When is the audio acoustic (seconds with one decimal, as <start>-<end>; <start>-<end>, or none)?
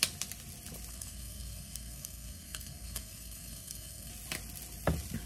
0.0-0.9; 4.1-5.3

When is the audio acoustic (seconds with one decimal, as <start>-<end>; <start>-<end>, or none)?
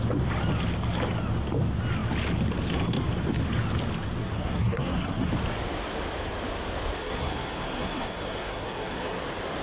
0.0-4.2; 5.3-7.0; 9.2-9.6